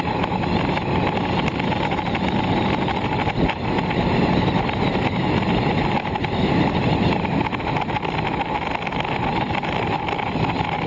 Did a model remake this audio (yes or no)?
no